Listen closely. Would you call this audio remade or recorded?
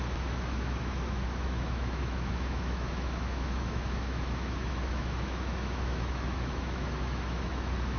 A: remade